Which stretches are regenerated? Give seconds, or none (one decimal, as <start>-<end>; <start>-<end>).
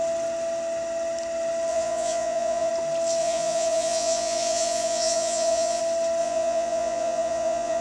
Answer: 1.7-2.7; 3.2-5.8; 6.2-7.8